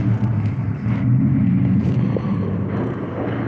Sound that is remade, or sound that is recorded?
recorded